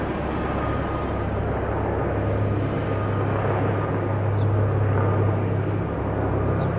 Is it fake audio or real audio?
real